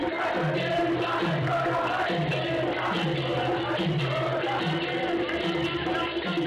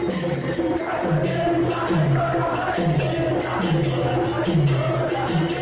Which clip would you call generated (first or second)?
first